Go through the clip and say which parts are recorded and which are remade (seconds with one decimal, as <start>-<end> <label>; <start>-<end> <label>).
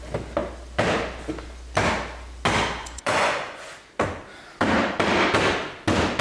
0.0-2.8 recorded; 2.8-3.7 remade; 3.7-6.2 recorded